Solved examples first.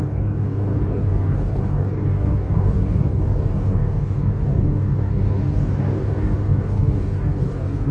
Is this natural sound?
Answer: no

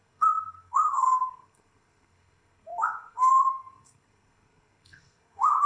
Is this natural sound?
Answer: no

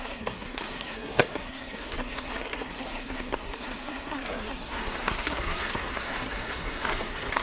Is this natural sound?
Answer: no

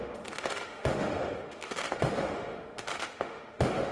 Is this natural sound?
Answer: no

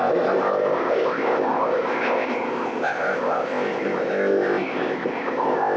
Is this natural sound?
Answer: no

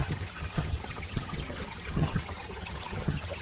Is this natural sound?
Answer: no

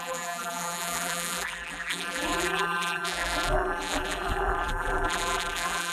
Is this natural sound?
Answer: no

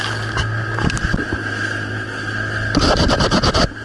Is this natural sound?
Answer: yes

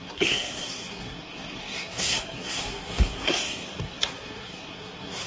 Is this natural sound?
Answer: no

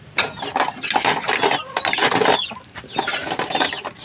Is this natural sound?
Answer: yes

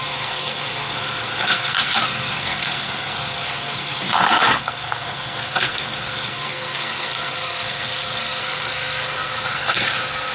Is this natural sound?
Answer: no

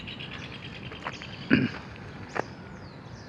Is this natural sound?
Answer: yes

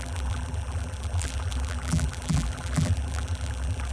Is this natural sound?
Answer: no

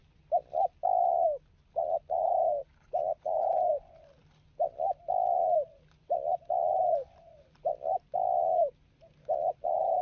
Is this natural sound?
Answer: yes